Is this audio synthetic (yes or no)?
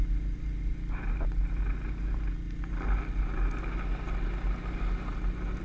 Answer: no